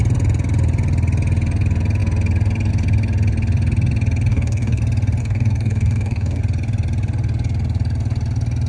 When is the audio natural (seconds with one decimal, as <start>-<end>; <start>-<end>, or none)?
0.0-4.3; 4.8-5.2; 6.4-8.7